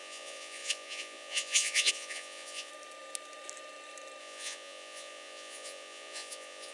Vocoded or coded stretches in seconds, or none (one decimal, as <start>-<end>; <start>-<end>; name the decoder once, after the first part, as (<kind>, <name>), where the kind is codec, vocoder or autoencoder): 0.0-2.7 (vocoder, Vocos); 4.2-6.7

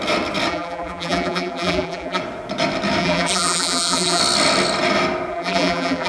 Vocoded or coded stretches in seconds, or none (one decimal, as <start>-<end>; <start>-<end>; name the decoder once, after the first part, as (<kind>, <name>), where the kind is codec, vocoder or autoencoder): 0.5-2.2 (vocoder, BigVGAN v2); 3.0-4.2; 5.3-6.1